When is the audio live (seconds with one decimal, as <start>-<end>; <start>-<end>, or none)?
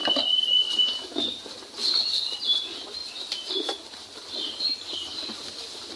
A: 0.0-6.0